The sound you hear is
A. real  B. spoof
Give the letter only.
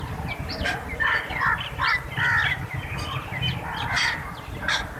A